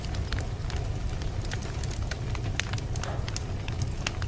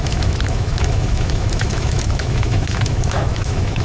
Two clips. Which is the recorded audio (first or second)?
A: first